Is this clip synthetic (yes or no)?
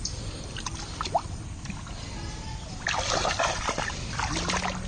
no